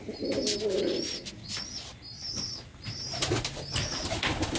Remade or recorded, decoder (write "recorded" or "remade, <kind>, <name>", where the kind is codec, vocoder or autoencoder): recorded